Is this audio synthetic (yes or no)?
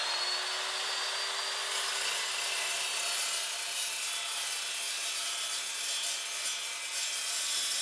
no